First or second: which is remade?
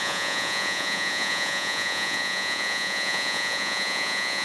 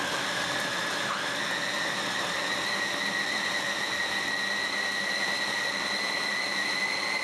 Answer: first